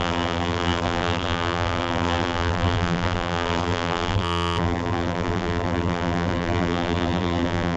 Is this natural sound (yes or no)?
no